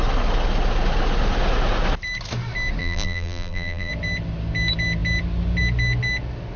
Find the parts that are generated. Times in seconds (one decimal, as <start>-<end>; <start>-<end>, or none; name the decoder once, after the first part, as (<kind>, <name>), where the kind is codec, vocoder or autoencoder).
2.8-3.9 (vocoder, BigVGAN v2)